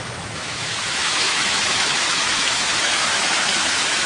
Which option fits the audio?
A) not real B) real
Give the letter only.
A